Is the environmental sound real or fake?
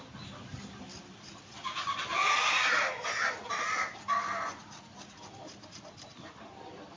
fake